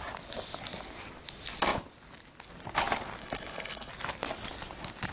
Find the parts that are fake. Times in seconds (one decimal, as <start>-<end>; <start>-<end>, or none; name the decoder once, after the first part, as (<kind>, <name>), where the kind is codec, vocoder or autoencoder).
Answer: 3.2-3.9 (codec, HILCodec)